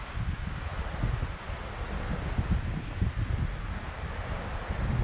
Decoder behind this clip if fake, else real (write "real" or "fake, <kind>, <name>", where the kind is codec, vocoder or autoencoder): real